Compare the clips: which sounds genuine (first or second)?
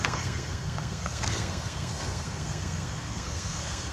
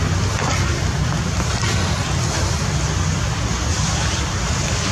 second